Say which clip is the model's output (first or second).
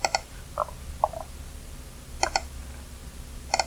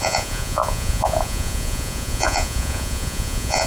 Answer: second